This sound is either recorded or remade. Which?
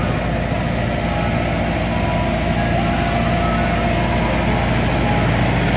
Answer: recorded